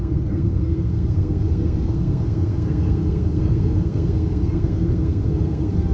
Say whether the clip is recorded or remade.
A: remade